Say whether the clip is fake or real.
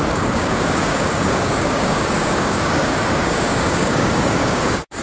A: fake